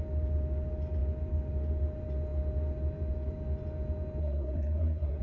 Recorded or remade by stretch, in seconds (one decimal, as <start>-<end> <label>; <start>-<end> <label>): 0.0-4.2 recorded; 4.2-5.2 remade

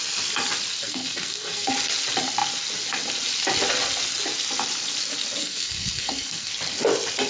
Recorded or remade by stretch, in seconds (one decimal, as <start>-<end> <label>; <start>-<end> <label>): 0.0-0.8 recorded; 0.8-1.7 remade; 1.7-5.4 recorded; 5.4-6.5 remade; 6.5-7.3 recorded

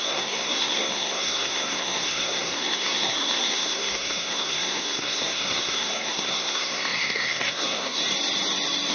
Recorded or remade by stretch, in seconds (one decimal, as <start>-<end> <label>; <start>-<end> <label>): 0.0-8.0 remade; 8.0-8.9 recorded

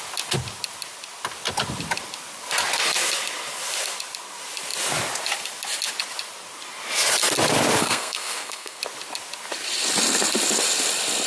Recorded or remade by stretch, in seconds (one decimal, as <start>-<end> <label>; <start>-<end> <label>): 0.0-7.8 recorded; 7.8-8.8 remade; 8.8-11.3 recorded

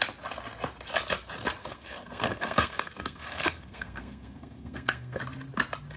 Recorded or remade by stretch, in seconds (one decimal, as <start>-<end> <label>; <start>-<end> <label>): 0.0-1.6 recorded; 1.6-5.2 remade; 5.2-6.0 recorded

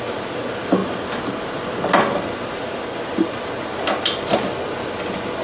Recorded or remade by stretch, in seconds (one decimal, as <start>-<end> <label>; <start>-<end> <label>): 0.0-5.4 recorded